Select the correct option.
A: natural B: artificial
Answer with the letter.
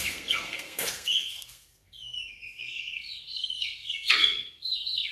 B